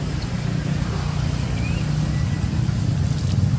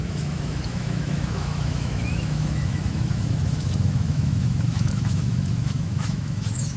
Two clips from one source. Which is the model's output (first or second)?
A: second